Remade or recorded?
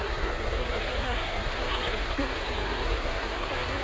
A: remade